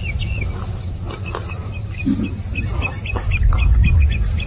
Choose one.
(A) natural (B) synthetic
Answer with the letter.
A